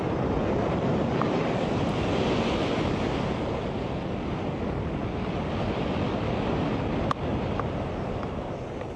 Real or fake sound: real